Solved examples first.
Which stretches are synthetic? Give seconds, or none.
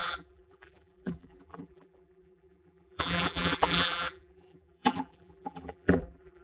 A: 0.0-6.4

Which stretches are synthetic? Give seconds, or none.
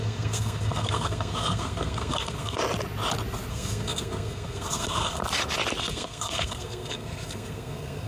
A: 0.0-2.6; 3.5-5.2; 5.8-8.1